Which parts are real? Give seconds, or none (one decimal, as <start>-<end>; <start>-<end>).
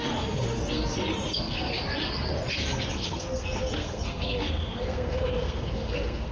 1.7-2.9